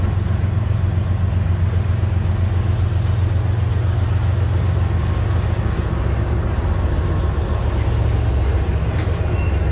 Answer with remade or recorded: recorded